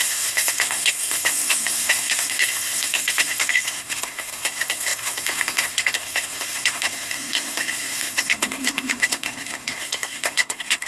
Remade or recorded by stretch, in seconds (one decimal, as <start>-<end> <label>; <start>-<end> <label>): 0.0-10.9 remade